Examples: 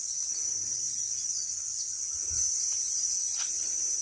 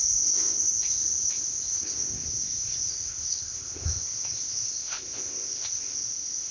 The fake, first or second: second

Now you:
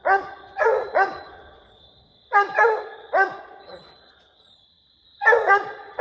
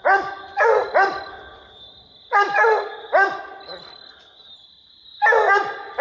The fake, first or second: first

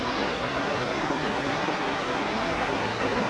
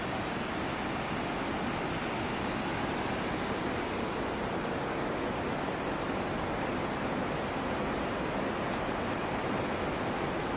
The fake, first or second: first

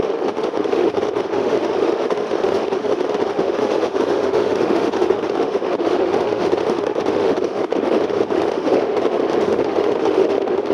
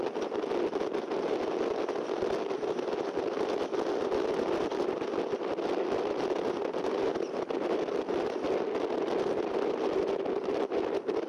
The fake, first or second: first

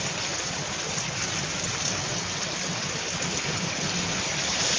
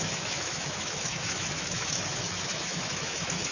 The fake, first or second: second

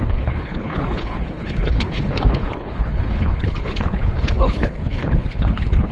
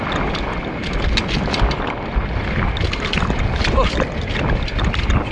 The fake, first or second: first